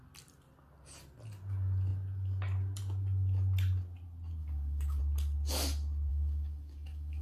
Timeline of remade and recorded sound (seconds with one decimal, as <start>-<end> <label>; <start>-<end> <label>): 0.0-4.4 recorded; 4.4-5.0 remade; 5.0-6.1 recorded; 6.1-7.2 remade